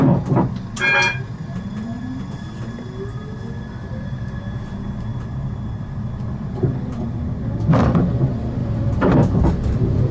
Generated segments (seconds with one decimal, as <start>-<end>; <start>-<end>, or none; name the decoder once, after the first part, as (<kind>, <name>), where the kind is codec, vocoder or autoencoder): none